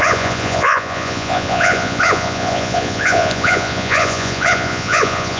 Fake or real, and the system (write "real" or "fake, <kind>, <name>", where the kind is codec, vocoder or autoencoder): fake, vocoder, Vocos